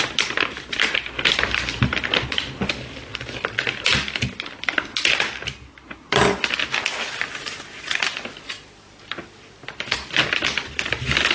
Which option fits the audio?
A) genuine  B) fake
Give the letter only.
A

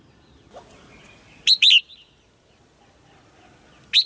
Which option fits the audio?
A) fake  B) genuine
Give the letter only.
B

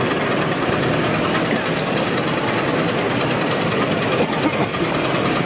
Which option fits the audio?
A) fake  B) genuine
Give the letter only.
B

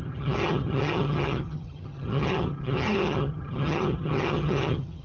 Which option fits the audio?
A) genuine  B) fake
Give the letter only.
B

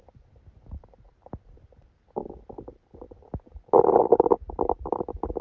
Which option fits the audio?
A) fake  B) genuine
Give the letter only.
B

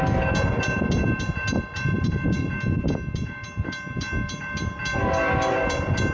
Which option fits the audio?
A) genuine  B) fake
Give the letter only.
A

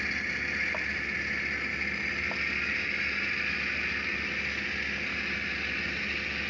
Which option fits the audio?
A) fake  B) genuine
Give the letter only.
B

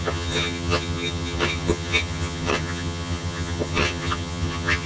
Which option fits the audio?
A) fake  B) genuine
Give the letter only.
A